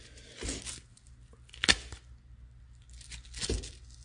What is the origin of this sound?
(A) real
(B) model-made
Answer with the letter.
A